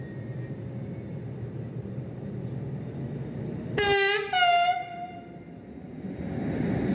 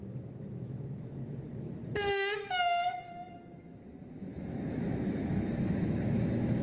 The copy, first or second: second